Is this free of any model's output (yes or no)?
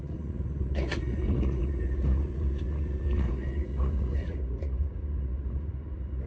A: no